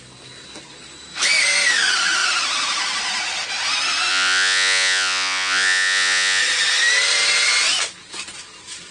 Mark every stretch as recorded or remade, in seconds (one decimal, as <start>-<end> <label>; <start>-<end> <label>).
0.0-4.1 recorded; 4.1-6.4 remade; 6.4-8.9 recorded